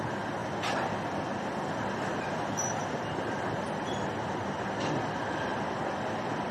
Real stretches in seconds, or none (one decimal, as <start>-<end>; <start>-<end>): 0.0-2.8; 3.3-6.5